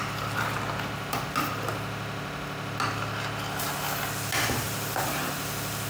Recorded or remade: recorded